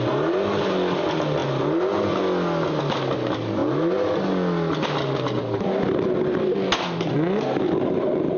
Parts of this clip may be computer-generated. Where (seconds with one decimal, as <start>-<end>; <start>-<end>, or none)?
none

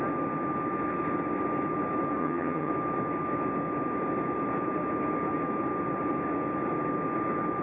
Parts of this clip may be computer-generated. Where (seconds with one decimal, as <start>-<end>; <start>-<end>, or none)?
2.2-2.7

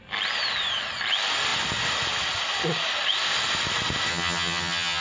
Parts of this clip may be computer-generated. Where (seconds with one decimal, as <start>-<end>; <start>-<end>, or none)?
4.1-5.0

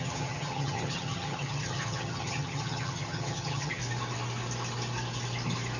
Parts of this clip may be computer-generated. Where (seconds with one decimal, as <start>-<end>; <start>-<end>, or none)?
0.0-3.8

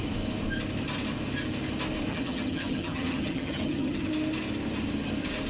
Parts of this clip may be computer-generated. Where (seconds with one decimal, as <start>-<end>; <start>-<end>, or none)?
2.1-4.1

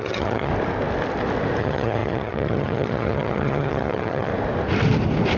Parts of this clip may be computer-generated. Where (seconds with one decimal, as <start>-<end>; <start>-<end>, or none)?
0.0-0.5; 1.6-4.3

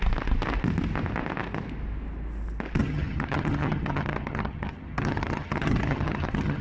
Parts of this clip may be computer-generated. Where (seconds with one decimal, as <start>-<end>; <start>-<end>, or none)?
2.8-6.6